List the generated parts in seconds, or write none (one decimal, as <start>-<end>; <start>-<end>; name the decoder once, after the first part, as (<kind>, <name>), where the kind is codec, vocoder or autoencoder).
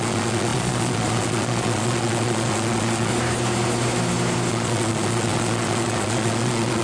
0.0-3.1 (vocoder, Vocos); 4.5-6.8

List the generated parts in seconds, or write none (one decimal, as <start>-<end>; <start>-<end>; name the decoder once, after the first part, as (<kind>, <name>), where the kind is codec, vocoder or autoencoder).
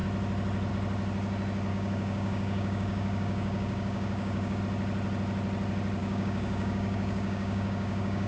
1.7-4.6 (codec, DAC); 6.0-8.3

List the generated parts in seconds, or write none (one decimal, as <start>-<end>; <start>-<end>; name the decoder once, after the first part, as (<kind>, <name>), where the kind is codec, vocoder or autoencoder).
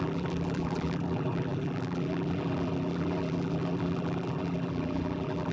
0.0-5.5 (vocoder, BigVGAN v2)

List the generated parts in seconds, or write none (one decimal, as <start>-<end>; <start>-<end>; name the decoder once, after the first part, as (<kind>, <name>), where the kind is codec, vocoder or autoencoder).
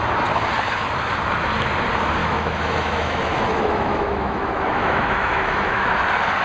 2.2-6.0 (autoencoder, DAC-VAE)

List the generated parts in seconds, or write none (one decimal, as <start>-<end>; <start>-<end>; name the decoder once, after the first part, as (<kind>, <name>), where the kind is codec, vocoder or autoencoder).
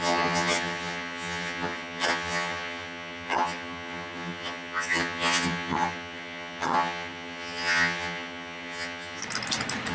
0.0-9.2 (vocoder, HiFi-GAN)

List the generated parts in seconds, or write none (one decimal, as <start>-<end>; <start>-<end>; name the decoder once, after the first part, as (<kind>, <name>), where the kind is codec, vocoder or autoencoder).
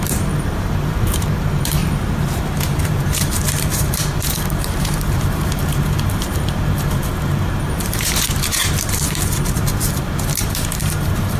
0.0-1.8 (vocoder, BigVGAN v2); 2.6-11.4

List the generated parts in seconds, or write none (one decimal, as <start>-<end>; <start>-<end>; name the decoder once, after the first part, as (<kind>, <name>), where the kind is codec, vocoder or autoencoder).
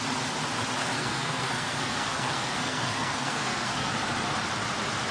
0.8-3.9 (codec, SNAC)